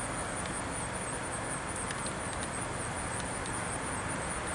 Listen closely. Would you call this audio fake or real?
real